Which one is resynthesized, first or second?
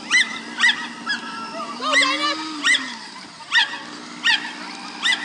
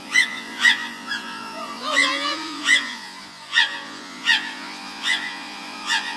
second